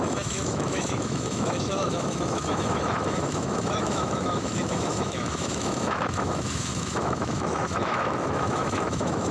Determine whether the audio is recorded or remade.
remade